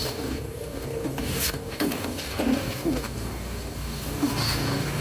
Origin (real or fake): fake